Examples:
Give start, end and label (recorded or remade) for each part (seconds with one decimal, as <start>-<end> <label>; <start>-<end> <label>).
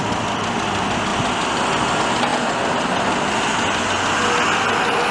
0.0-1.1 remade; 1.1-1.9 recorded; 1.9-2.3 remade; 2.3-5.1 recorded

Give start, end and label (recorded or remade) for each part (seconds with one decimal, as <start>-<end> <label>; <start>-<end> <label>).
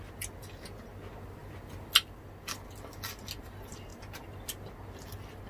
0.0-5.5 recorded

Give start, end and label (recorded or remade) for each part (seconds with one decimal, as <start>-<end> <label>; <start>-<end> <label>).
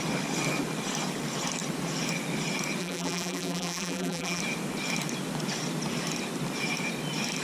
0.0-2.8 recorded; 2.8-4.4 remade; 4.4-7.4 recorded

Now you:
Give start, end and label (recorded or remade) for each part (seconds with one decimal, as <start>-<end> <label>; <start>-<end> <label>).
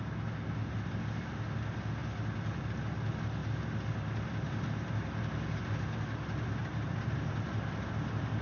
0.0-6.6 recorded; 6.6-7.3 remade; 7.3-8.4 recorded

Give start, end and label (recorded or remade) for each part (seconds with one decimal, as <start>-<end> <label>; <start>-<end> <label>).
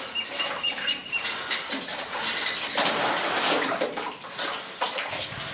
0.0-1.0 recorded; 1.0-4.3 remade; 4.3-5.5 recorded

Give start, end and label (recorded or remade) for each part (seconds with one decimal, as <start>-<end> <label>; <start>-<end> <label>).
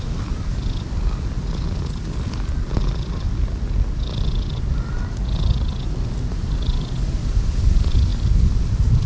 0.0-9.1 recorded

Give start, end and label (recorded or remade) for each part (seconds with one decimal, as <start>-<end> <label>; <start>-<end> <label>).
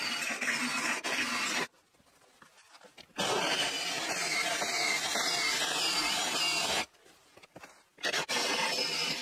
0.0-9.2 recorded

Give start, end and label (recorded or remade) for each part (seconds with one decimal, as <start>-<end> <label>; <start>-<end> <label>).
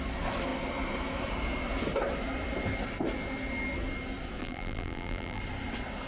0.0-4.4 recorded; 4.4-5.4 remade; 5.4-6.1 recorded